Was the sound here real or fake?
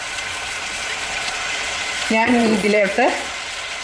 fake